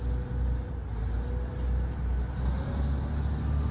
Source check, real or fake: real